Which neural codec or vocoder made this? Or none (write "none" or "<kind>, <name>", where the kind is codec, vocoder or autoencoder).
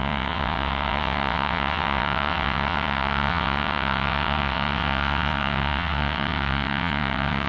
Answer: vocoder, WaveNeXt